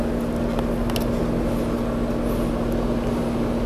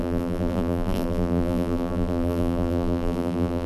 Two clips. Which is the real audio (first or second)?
first